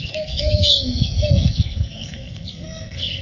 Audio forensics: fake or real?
fake